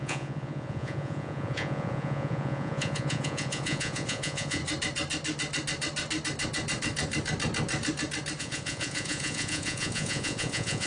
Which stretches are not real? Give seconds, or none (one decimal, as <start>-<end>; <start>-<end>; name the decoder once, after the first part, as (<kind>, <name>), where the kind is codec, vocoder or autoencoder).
0.0-4.6 (vocoder, Vocos); 8.4-10.9